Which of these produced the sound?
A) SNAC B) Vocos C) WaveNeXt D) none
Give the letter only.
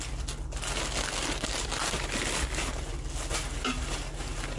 D